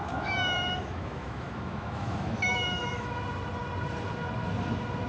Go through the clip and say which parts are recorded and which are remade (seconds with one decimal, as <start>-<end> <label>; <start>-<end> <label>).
0.0-3.1 remade; 3.1-5.1 recorded